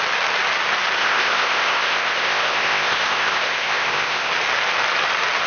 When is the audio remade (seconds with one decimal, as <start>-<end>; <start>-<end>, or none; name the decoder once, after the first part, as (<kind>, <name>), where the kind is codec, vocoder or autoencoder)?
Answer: 1.0-4.3 (codec, ZipCodec)